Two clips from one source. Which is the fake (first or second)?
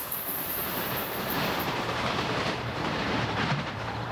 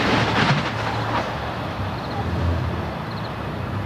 first